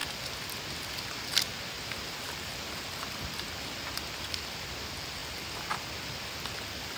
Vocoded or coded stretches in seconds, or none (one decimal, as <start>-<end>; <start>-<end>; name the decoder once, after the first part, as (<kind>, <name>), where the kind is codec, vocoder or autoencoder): none